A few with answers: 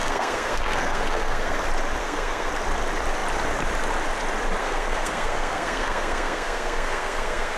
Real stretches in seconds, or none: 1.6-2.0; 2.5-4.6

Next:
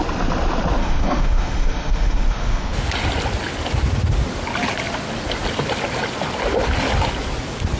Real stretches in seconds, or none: 0.0-0.8; 2.9-7.8